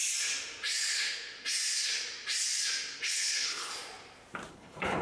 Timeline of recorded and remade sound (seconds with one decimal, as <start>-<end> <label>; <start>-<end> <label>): 0.0-3.0 recorded; 3.0-3.7 remade; 3.7-4.5 recorded; 4.5-5.0 remade